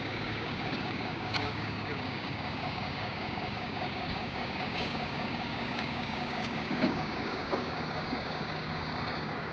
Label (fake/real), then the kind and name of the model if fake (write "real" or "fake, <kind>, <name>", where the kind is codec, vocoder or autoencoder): fake, codec, DAC